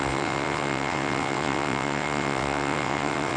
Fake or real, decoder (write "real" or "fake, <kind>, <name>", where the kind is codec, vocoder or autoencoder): fake, vocoder, WaveNeXt